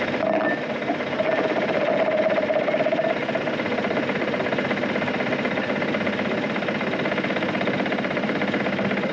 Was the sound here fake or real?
real